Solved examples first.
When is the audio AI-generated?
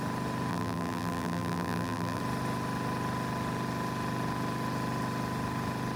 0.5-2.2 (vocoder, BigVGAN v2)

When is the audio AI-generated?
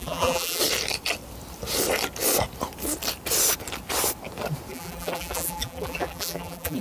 0.0-0.6 (vocoder, BigVGAN v2); 4.7-6.8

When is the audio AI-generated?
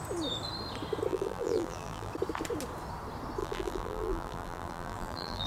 1.1-2.1 (vocoder, BigVGAN v2); 3.4-5.5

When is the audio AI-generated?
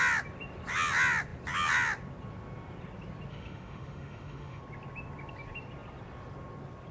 3.3-4.6 (autoencoder, DAC-VAE)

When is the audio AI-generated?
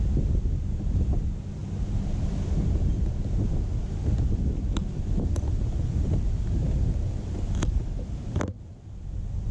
1.6-2.5 (vocoder, BigVGAN v2)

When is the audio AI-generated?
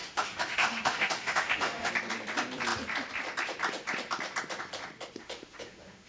0.0-1.9 (autoencoder, DAC-VAE); 5.2-6.1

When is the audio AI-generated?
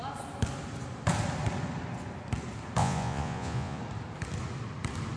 2.8-3.8 (vocoder, Vocos)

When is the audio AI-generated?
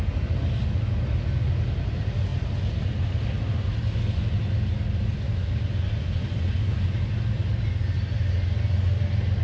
none